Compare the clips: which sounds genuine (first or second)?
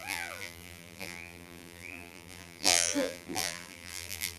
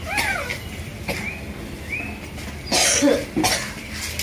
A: second